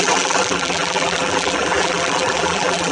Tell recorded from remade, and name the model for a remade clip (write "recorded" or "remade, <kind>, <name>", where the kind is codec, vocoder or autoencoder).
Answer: remade, vocoder, BigVGAN v2